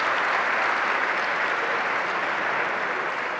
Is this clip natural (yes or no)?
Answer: yes